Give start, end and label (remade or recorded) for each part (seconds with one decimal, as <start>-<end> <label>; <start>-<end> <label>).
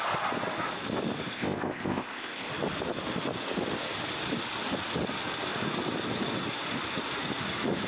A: 0.0-1.3 recorded; 1.3-2.5 remade; 2.5-7.9 recorded